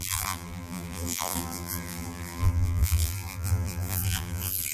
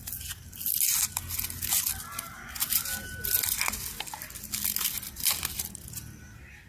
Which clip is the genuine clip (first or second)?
second